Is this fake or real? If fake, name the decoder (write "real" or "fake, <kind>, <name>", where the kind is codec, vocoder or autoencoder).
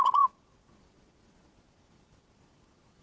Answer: fake, vocoder, Vocos